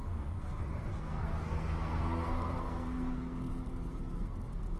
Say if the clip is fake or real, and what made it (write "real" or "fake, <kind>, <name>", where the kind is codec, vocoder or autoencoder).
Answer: fake, codec, SNAC